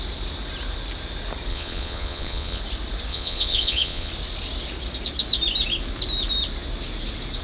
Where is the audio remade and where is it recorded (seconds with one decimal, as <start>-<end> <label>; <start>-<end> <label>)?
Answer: 0.0-1.5 recorded; 1.5-2.6 remade; 2.6-3.1 recorded; 3.1-4.1 remade; 4.1-7.4 recorded